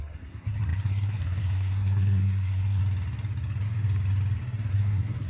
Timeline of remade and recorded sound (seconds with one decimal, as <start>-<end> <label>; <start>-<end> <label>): 0.0-2.8 remade; 2.8-4.7 recorded; 4.7-5.3 remade